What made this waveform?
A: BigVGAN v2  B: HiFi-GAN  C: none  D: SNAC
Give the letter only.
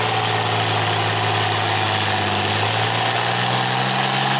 C